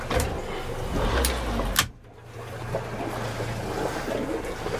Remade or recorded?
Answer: recorded